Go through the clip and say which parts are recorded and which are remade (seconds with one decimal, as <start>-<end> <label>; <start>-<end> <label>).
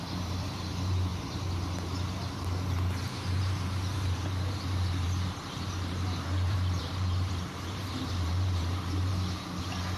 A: 0.0-1.1 remade; 1.1-2.7 recorded; 2.7-10.0 remade